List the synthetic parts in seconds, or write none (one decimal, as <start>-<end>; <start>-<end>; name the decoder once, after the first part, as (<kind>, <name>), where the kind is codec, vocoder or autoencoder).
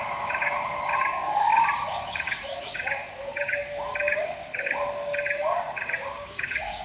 0.0-6.8 (codec, DAC)